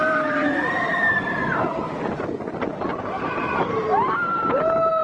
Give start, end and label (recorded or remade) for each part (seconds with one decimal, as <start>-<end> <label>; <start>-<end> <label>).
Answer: 0.0-0.4 recorded; 0.4-1.1 remade; 1.1-2.9 recorded; 2.9-4.6 remade; 4.6-5.0 recorded